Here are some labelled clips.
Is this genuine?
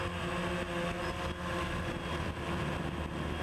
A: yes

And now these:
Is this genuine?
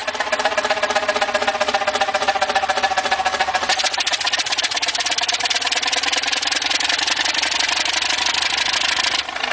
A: yes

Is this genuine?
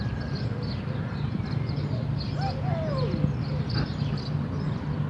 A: yes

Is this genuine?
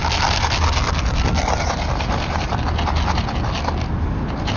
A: yes